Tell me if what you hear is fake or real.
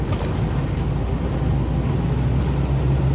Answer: real